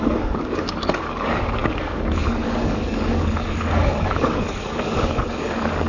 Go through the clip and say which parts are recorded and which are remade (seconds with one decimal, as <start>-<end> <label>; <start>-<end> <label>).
0.0-5.9 remade